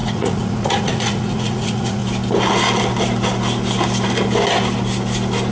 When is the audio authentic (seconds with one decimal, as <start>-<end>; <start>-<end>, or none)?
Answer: 2.0-5.5